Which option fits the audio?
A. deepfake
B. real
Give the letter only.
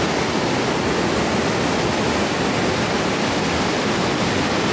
B